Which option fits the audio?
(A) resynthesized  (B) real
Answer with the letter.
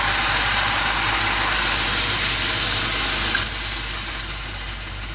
B